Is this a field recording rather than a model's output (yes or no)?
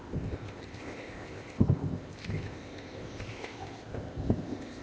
no